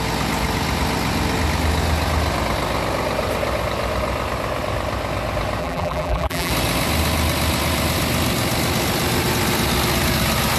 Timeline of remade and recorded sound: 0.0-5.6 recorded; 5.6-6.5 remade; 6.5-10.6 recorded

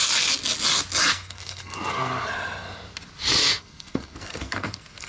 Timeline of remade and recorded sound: 0.0-1.1 recorded; 1.1-2.1 remade; 2.1-3.4 recorded; 3.4-5.1 remade

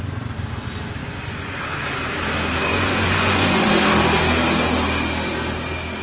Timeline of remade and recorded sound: 0.0-1.0 recorded; 1.0-1.6 remade; 1.6-2.7 recorded; 2.7-3.7 remade; 3.7-6.0 recorded

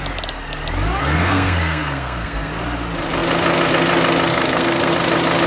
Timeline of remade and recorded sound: 0.0-1.0 recorded; 1.0-2.5 remade; 2.5-4.3 recorded; 4.3-4.9 remade; 4.9-5.5 recorded

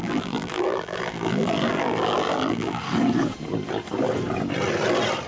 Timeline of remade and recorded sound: 0.0-2.8 remade; 2.8-5.3 recorded